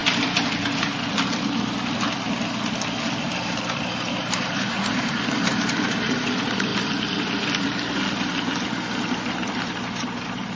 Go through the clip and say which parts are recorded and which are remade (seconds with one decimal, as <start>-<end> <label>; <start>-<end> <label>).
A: 0.0-3.2 recorded; 3.2-6.7 remade; 6.7-9.3 recorded; 9.3-10.6 remade